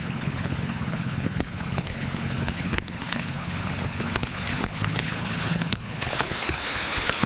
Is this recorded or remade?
remade